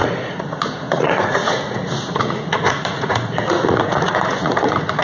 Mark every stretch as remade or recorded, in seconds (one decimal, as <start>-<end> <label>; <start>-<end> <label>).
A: 0.0-5.0 remade